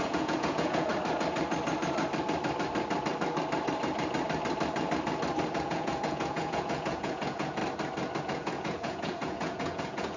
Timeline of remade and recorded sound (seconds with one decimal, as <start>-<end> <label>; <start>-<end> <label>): 0.0-0.9 remade; 0.9-5.5 recorded; 5.5-7.6 remade; 7.6-8.2 recorded; 8.2-10.2 remade